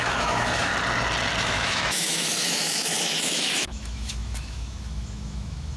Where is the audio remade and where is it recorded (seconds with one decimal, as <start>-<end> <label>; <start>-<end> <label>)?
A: 0.0-0.7 remade; 0.7-1.4 recorded; 1.4-5.8 remade